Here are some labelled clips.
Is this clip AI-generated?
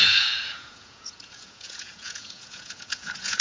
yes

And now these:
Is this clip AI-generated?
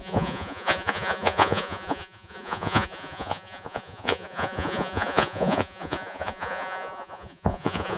yes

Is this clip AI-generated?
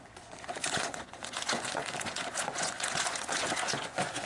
yes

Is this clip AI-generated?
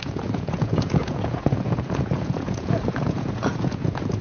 yes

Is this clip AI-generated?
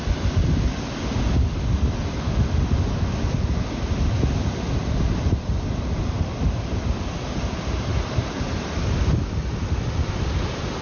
no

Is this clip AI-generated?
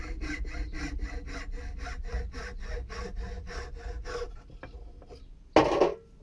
no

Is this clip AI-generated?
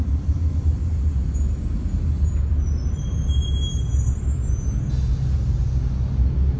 no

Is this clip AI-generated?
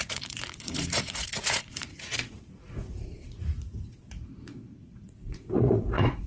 yes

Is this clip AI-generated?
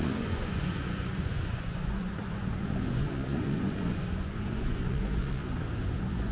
yes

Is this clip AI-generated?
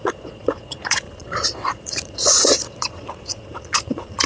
yes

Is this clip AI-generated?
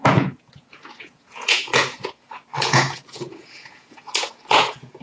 yes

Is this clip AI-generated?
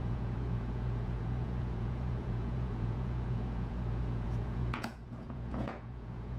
yes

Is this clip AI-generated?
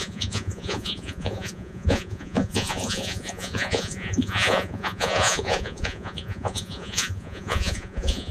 yes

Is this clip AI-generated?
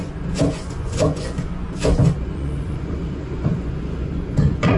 yes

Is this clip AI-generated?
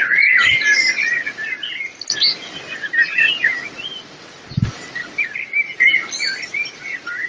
no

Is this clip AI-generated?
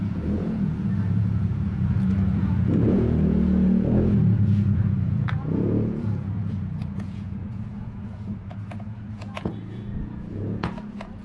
yes